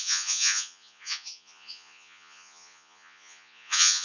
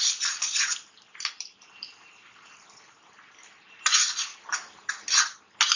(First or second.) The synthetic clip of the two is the first